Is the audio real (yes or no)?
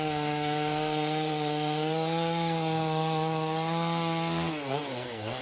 no